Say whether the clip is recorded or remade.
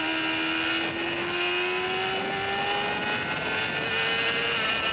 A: recorded